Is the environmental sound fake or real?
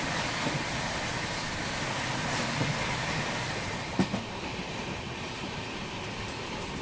real